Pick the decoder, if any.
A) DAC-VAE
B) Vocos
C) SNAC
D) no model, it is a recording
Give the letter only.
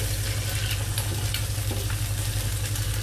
D